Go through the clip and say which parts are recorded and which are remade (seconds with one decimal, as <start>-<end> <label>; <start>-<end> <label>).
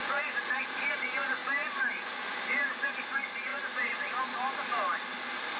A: 0.0-5.6 recorded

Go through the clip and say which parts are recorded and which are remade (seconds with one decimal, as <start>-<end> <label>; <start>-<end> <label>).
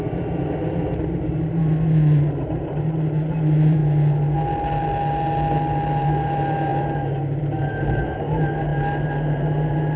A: 0.0-3.8 remade; 3.8-6.0 recorded; 6.0-10.0 remade